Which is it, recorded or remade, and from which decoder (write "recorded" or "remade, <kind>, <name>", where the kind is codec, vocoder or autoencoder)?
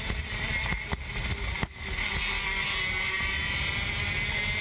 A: recorded